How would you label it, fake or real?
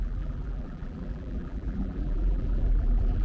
fake